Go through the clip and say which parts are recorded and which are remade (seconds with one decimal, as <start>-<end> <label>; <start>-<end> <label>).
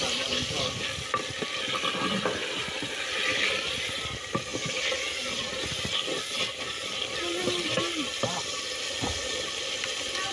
0.0-10.3 recorded